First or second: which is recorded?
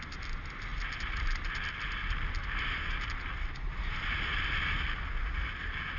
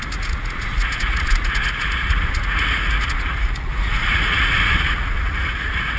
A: first